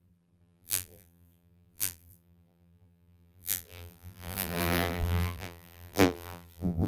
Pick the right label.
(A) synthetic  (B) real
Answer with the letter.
A